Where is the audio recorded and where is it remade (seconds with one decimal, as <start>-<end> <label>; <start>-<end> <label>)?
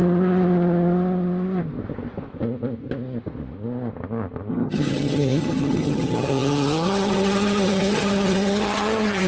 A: 0.0-4.5 recorded; 4.5-9.3 remade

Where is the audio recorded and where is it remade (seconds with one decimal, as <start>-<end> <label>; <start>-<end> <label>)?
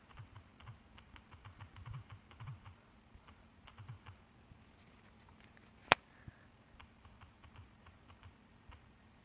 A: 0.0-9.2 recorded